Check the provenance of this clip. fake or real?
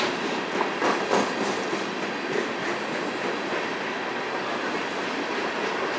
real